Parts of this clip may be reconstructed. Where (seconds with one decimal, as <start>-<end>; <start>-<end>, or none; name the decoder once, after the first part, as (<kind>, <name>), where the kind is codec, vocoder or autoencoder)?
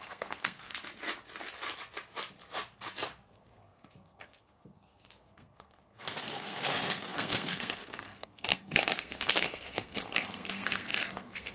0.0-0.7 (codec, SNAC); 3.3-11.5